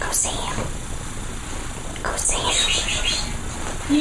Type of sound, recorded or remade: recorded